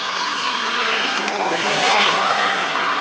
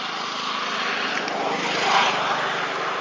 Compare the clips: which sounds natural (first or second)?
second